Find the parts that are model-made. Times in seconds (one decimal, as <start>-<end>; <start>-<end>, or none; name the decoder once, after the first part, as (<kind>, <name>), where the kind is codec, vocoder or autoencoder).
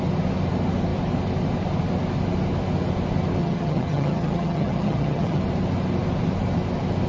3.4-5.4 (vocoder, HiFi-GAN)